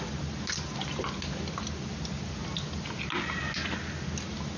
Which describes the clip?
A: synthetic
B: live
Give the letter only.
B